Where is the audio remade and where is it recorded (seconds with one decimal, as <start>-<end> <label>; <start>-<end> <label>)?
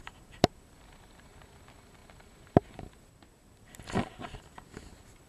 0.0-5.3 remade